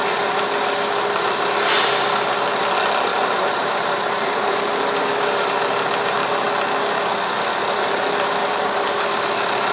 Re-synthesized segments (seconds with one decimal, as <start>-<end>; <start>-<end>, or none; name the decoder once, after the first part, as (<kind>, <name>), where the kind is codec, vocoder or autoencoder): 3.1-5.5 (vocoder, BigVGAN v2); 7.5-8.0; 8.4-9.1